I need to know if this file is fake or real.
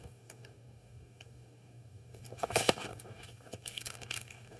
fake